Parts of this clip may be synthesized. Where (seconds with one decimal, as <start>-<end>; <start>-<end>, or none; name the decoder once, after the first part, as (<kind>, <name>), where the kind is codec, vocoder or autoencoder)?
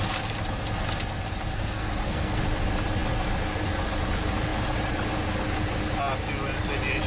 1.5-2.4 (codec, SNAC)